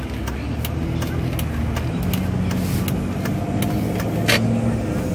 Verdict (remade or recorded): recorded